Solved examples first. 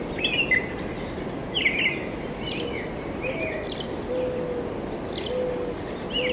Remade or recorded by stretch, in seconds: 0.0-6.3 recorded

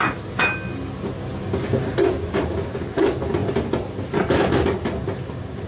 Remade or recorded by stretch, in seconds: 0.0-5.7 recorded

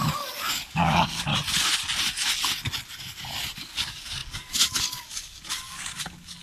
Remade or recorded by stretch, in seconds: 0.0-1.3 remade; 1.3-3.6 recorded; 3.6-6.4 remade

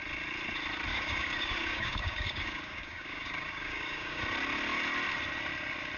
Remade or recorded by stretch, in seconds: 0.0-0.9 recorded; 0.9-4.2 remade; 4.2-6.0 recorded

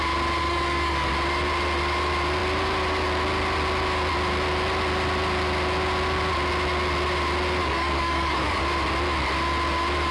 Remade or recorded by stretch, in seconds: 0.0-0.4 recorded; 0.4-1.1 remade; 1.1-7.6 recorded; 7.6-8.6 remade; 8.6-10.1 recorded

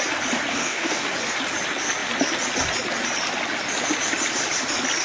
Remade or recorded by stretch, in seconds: 0.0-0.5 recorded; 0.5-1.1 remade; 1.1-5.0 recorded

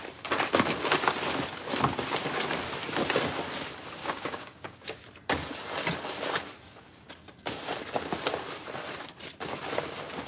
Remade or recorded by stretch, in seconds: 0.0-4.0 recorded; 4.0-5.0 remade; 5.0-10.3 recorded